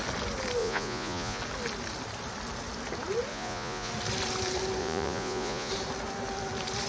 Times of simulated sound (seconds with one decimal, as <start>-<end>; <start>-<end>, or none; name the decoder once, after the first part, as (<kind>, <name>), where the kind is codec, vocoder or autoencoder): 0.6-1.4 (vocoder, Vocos); 3.3-3.9; 4.8-5.7